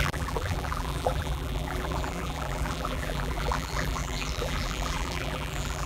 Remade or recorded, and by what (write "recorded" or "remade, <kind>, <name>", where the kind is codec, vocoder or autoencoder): remade, vocoder, BigVGAN v2